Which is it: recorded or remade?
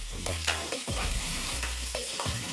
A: remade